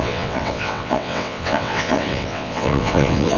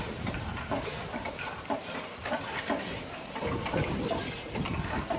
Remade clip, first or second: first